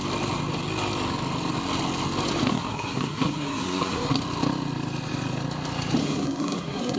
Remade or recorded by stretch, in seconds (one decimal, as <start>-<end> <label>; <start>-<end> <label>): 0.0-2.5 recorded; 2.5-4.2 remade; 4.2-6.0 recorded; 6.0-7.0 remade